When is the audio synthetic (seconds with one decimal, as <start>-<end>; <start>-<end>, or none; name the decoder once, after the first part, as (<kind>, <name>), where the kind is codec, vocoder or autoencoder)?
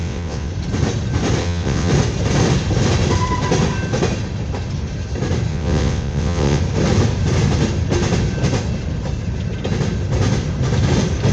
0.0-0.5 (vocoder, WaveNeXt); 1.4-1.9; 5.5-6.6